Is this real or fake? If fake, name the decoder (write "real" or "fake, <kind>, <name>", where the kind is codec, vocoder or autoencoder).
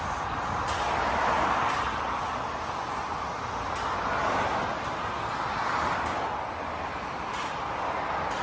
real